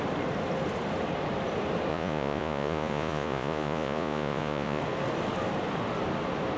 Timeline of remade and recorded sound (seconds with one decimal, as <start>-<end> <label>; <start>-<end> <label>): 0.0-1.9 recorded; 1.9-4.8 remade; 4.8-6.6 recorded